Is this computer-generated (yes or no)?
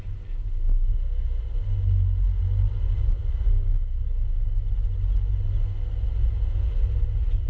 no